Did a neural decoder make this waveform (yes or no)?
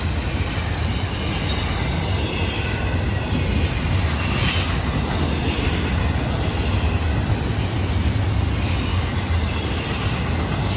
no